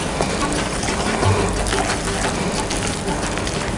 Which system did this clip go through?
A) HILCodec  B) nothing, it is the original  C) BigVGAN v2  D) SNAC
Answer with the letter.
B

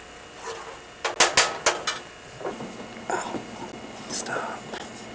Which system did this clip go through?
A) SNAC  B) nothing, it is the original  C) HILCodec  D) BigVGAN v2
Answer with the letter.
B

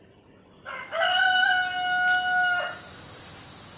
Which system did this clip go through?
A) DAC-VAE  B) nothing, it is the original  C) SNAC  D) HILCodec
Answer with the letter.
B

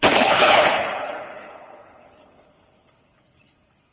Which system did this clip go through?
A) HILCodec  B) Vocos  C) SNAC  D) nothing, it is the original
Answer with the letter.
A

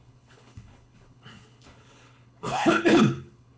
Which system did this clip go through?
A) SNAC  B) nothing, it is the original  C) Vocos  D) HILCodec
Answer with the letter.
D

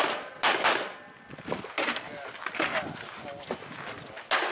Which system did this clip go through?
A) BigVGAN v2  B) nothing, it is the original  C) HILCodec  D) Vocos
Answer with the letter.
B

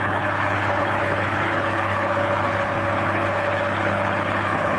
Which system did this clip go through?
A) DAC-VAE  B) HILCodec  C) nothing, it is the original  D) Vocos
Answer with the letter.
B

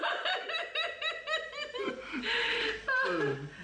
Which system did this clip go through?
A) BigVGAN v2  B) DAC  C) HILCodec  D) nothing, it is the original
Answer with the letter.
D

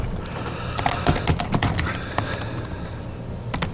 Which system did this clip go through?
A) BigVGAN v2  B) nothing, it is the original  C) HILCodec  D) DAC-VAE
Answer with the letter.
B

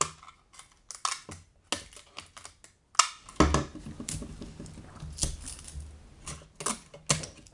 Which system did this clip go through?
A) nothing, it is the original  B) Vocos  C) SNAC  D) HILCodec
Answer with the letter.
A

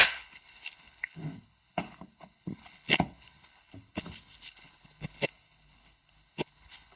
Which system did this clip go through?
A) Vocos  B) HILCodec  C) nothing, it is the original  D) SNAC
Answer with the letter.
B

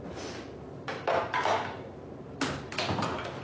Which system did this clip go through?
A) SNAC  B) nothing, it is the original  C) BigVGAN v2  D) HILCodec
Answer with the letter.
B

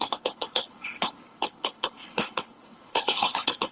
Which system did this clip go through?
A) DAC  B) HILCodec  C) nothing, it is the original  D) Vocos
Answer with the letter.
B